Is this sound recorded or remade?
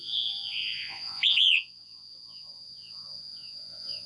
remade